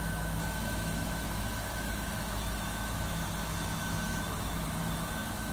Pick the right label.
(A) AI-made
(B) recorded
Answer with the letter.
A